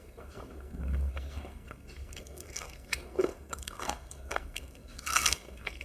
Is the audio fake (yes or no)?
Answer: yes